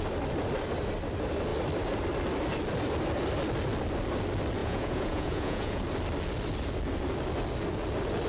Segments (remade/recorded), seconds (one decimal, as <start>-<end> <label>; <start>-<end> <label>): 0.0-4.6 recorded; 4.6-5.8 remade; 5.8-8.3 recorded